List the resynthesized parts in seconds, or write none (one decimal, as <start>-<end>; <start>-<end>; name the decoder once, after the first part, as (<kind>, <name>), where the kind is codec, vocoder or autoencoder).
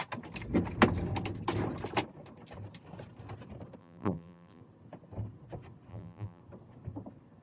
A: 3.8-4.6 (vocoder, BigVGAN v2); 5.9-6.4